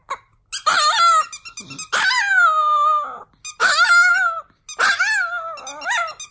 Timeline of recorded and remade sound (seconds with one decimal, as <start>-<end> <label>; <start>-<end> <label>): 0.0-3.6 recorded; 3.6-4.1 remade; 4.1-6.3 recorded